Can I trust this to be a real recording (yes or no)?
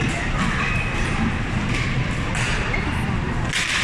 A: yes